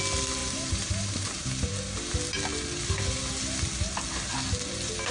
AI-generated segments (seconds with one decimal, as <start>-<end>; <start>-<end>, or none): 0.4-1.7